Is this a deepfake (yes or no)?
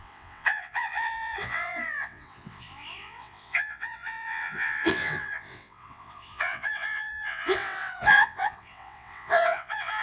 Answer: yes